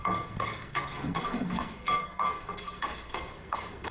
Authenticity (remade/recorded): remade